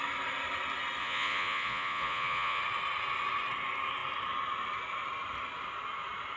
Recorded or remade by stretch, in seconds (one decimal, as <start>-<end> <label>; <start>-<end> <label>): 0.0-1.0 recorded; 1.0-2.6 remade; 2.6-6.4 recorded